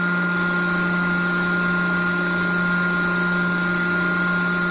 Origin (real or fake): fake